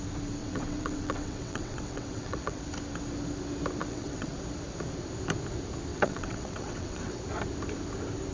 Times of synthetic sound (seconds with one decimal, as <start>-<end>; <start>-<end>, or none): 0.4-2.6; 3.8-4.3; 5.9-7.2